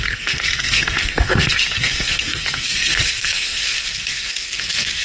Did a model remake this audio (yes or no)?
yes